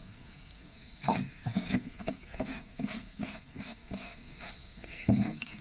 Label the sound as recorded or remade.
remade